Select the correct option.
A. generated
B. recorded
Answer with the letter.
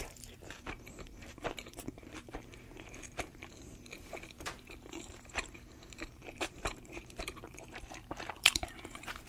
A